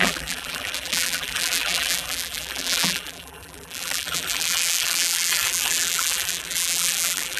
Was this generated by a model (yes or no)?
yes